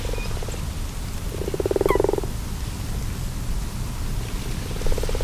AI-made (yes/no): no